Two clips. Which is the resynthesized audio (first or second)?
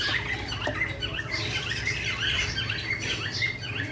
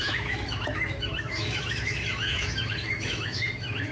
second